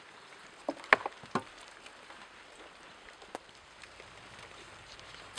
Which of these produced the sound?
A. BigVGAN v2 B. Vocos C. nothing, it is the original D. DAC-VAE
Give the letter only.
C